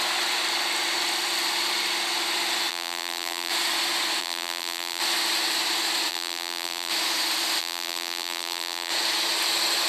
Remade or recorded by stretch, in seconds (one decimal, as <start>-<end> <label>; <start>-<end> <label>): 0.0-2.7 recorded; 2.7-3.5 remade; 3.5-4.2 recorded; 4.2-5.0 remade; 5.0-6.1 recorded; 6.1-6.9 remade; 6.9-7.6 recorded; 7.6-8.9 remade; 8.9-9.9 recorded